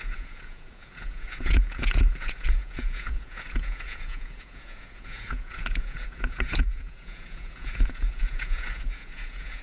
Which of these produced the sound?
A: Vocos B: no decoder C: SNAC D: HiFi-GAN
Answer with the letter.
A